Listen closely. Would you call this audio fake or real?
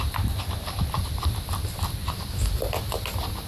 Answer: fake